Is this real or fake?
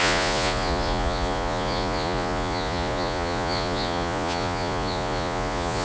fake